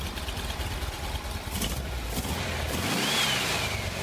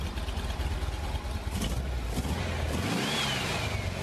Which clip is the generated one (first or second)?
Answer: first